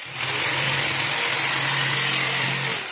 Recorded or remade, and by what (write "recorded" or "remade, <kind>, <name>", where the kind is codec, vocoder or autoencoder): recorded